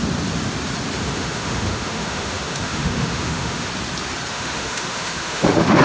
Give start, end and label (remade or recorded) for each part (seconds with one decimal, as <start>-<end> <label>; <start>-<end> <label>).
0.0-1.0 recorded; 1.0-3.7 remade; 3.7-4.3 recorded; 4.3-5.8 remade